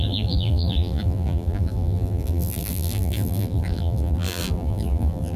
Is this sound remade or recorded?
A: remade